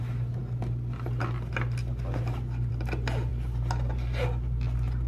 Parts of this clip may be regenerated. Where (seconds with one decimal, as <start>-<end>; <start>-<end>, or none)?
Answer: none